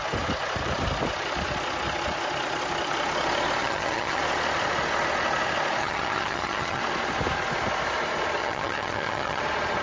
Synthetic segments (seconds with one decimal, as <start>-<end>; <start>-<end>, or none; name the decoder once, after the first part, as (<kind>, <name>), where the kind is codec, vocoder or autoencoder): 3.6-4.2 (vocoder, HiFi-GAN); 5.8-6.8; 8.4-9.4